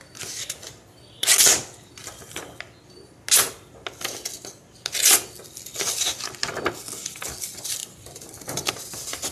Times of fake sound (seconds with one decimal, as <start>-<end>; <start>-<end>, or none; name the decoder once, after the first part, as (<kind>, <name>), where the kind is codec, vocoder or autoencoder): none